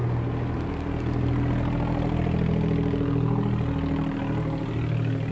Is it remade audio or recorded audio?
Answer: recorded